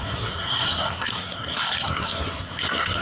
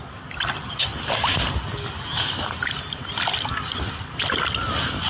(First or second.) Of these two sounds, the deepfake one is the first